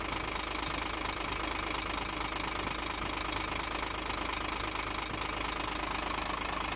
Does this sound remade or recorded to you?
recorded